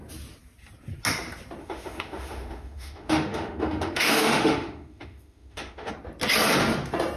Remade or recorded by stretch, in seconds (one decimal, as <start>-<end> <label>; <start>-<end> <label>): 0.0-1.6 recorded; 1.6-5.9 remade; 5.9-7.2 recorded